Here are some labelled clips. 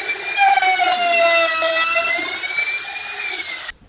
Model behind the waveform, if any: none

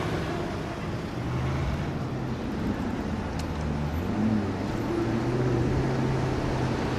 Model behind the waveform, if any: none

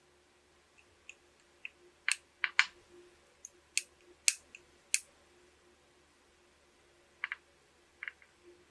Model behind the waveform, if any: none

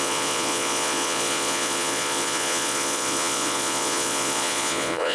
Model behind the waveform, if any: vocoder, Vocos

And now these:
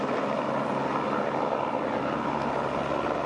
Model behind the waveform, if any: none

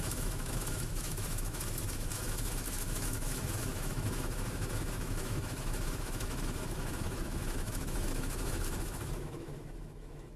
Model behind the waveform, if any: autoencoder, DAC-VAE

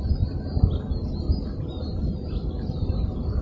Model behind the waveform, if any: none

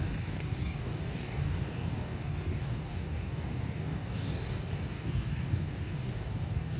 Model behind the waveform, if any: codec, DAC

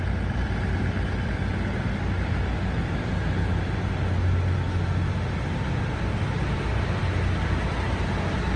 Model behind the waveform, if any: none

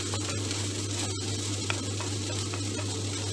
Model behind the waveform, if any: none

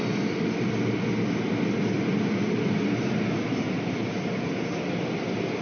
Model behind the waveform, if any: none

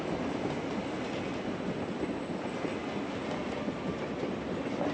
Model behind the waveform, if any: none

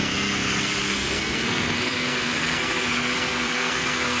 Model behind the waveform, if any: codec, SNAC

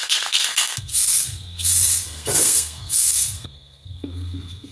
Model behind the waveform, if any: codec, SNAC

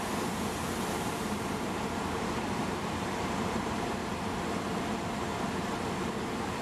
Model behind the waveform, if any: vocoder, BigVGAN v2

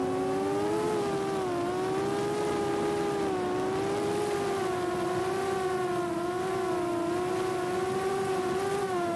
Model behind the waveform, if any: none